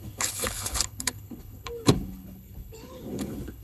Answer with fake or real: fake